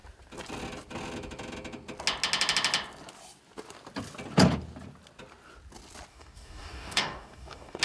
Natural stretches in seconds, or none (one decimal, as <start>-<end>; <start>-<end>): 0.0-6.1